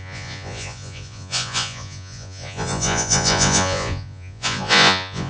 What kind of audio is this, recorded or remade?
remade